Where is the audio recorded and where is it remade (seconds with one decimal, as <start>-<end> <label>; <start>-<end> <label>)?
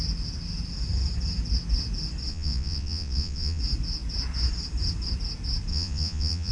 0.0-2.3 recorded; 2.3-3.6 remade; 3.6-5.7 recorded; 5.7-6.5 remade